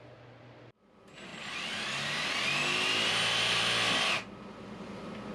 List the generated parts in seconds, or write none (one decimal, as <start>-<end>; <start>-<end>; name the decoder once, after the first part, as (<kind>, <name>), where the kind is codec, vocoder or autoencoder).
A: none